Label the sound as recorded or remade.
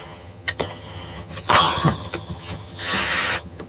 remade